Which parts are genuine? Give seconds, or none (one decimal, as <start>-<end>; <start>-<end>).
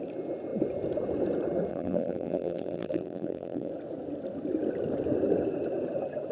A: 0.0-1.7; 3.7-6.3